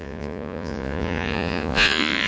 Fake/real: fake